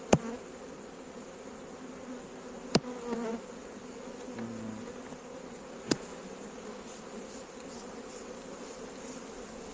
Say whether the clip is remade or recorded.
recorded